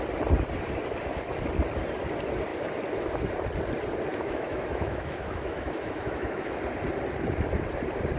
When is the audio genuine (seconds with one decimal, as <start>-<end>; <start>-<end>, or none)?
0.0-4.1; 6.6-8.2